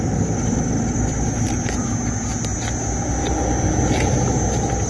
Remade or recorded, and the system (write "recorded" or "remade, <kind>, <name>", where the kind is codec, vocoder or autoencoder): recorded